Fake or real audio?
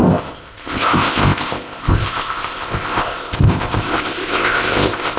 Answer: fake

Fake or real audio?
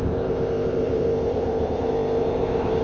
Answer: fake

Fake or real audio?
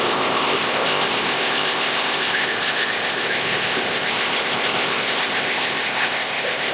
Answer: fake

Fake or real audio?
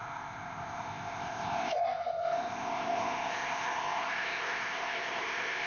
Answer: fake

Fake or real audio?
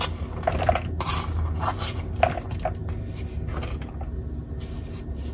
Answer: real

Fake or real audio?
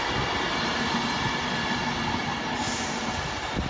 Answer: real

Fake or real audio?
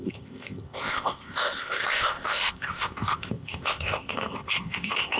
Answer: fake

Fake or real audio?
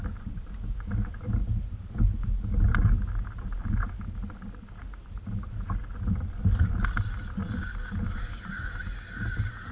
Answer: real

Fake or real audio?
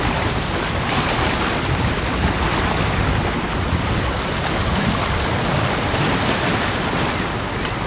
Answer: real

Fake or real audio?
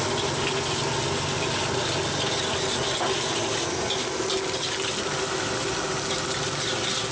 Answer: real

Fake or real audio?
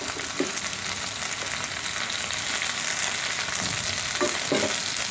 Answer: real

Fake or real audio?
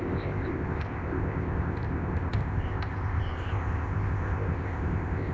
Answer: fake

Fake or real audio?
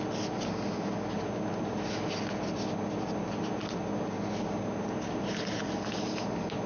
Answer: real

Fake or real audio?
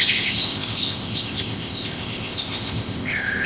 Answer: fake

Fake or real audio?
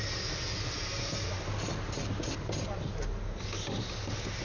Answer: real